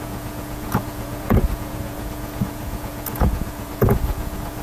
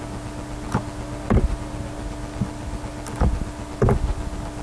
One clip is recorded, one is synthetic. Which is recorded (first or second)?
second